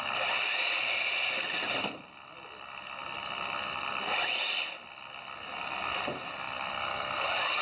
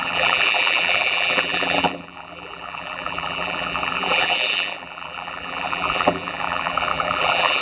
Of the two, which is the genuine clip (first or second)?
first